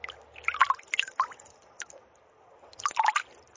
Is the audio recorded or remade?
recorded